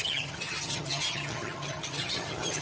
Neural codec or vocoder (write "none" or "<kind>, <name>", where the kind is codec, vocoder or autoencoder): vocoder, HiFi-GAN